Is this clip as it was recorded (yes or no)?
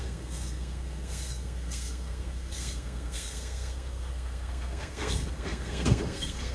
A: no